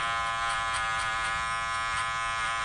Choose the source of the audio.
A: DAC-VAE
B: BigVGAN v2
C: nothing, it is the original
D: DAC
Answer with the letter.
C